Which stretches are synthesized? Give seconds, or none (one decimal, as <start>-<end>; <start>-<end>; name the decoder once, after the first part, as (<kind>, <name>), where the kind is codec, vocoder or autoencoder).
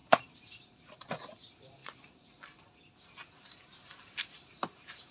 0.0-0.9 (vocoder, BigVGAN v2); 1.8-2.3; 3.2-5.1